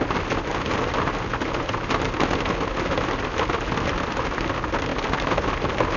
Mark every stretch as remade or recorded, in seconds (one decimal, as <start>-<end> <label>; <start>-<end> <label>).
0.0-6.0 recorded